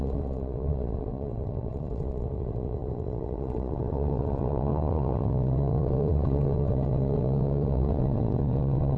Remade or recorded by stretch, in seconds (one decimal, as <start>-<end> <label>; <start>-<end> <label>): 0.0-9.0 remade